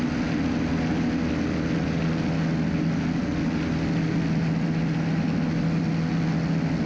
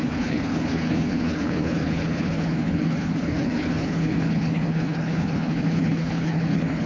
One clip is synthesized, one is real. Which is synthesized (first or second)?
second